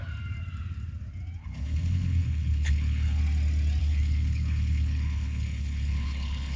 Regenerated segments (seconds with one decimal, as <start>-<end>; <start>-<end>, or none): 1.4-3.2; 3.8-6.6